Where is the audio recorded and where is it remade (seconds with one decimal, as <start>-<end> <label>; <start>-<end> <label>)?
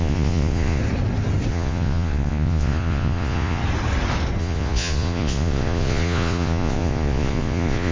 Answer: 0.0-0.8 remade; 0.8-1.5 recorded; 1.5-3.6 remade; 3.6-4.4 recorded; 4.4-7.9 remade